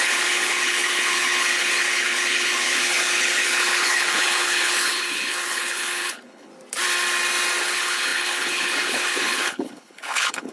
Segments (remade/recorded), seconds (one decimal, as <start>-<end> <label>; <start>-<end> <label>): 0.0-6.5 remade; 6.5-7.6 recorded; 7.6-10.5 remade